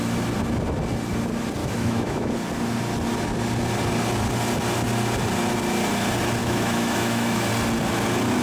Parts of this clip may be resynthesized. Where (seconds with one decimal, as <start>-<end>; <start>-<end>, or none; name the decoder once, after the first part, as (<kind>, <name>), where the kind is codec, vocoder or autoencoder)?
1.6-2.3 (autoencoder, DAC-VAE); 6.4-7.5

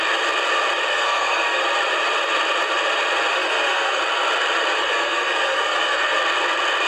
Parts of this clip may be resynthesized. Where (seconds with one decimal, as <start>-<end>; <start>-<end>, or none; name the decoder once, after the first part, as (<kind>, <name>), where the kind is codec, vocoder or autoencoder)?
0.9-1.6 (codec, SNAC); 3.3-4.0; 4.8-6.2

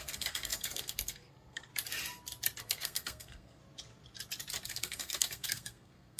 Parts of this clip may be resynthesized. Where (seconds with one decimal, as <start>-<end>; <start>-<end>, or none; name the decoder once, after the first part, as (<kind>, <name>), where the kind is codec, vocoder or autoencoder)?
0.0-1.7 (codec, SNAC); 2.6-3.6; 4.7-6.2